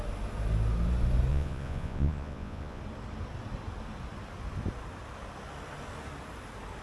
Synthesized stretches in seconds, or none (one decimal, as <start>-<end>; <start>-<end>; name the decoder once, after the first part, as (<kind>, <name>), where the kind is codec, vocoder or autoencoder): 1.3-2.8 (vocoder, Vocos)